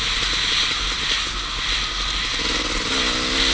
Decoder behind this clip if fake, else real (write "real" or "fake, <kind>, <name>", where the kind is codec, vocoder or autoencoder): real